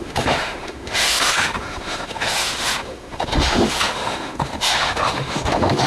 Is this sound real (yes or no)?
no